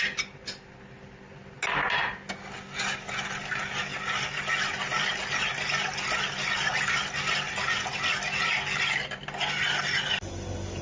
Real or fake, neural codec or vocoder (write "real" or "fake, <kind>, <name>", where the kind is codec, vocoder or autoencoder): real